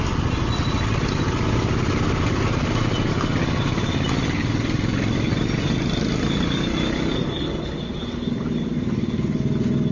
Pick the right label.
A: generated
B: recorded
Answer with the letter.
B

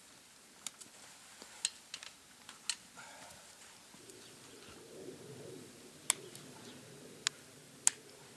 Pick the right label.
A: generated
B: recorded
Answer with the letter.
B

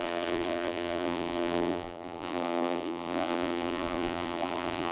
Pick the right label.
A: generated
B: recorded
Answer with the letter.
A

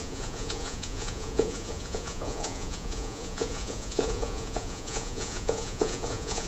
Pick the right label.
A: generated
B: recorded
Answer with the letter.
A